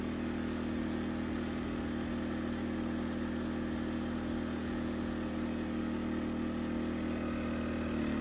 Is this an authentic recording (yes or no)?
yes